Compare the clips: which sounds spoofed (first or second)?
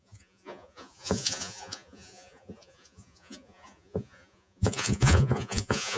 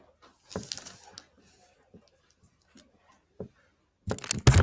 first